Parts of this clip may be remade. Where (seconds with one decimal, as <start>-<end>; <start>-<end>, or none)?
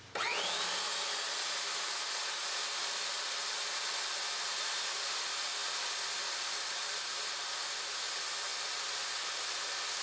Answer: none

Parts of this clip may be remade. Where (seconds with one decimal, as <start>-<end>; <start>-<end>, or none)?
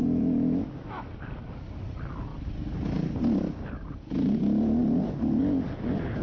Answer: 0.0-1.1